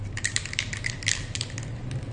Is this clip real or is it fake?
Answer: fake